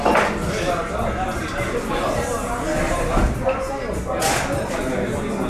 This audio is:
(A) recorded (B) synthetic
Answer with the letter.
A